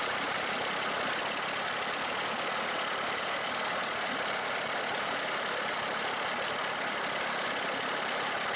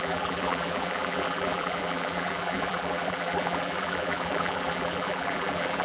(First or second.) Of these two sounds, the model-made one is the second